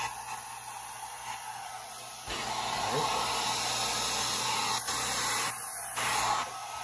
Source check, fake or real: real